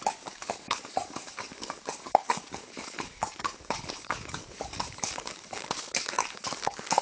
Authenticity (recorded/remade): remade